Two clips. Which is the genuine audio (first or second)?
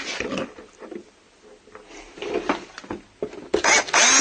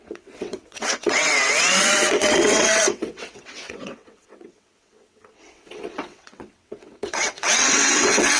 first